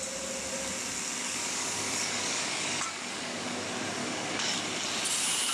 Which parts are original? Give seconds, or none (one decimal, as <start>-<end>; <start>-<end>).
0.0-1.2; 3.6-4.0; 4.6-5.5